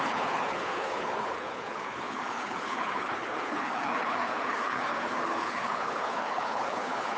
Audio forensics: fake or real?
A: fake